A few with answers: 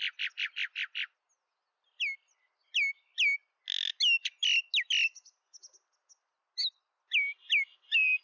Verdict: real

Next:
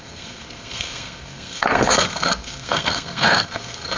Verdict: fake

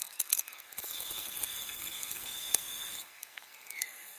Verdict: fake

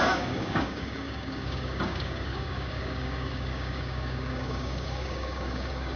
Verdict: fake